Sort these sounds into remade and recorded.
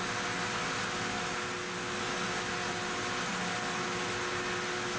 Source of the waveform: recorded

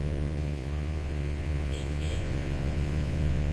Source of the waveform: remade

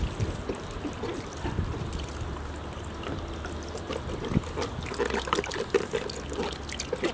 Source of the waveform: recorded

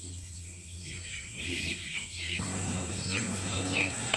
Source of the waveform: remade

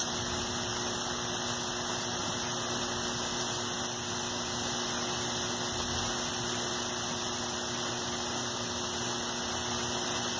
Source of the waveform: recorded